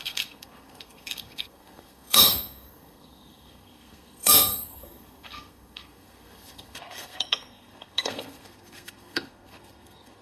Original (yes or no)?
no